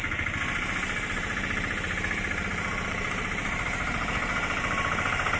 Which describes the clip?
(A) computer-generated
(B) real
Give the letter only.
A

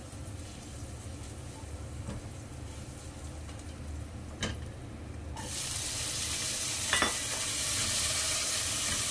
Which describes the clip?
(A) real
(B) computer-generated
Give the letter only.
A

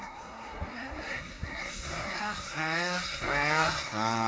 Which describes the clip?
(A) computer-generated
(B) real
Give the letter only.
A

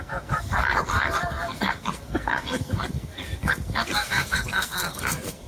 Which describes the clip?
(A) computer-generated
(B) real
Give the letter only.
A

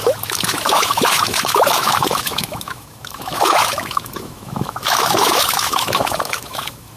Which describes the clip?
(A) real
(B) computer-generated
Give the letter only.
B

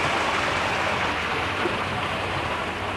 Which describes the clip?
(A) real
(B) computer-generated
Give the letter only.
A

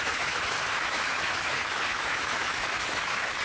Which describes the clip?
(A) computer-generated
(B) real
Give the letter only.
A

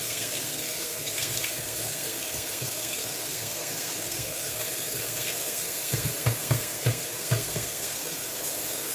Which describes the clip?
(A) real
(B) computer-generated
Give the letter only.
B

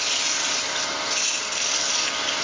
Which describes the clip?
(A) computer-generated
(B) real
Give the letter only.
B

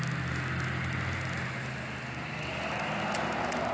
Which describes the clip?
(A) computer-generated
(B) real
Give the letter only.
B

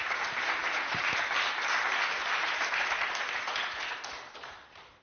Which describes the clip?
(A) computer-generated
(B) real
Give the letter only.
B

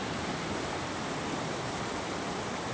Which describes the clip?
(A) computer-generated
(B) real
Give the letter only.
B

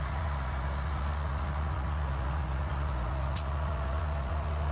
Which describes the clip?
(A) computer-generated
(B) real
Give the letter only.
A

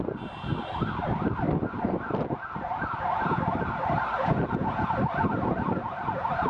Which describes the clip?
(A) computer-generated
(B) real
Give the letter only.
B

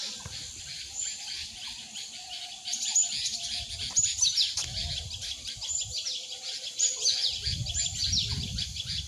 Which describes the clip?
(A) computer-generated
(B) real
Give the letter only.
B